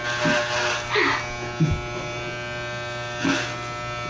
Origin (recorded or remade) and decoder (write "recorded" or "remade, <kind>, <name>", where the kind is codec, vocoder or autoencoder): recorded